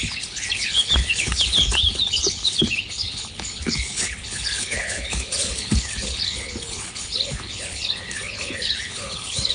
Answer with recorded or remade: remade